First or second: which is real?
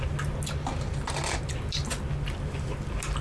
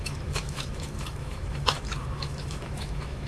first